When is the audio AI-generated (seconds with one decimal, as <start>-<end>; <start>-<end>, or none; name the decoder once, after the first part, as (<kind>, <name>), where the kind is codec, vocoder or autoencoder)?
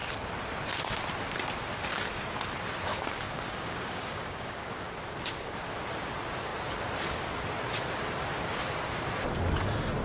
2.9-4.9 (codec, DAC)